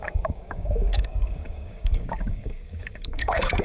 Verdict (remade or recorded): remade